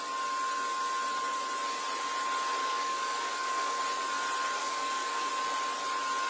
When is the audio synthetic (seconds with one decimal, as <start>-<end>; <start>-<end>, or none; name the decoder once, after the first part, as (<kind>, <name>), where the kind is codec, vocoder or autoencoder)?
2.6-3.8 (codec, DAC); 4.6-5.3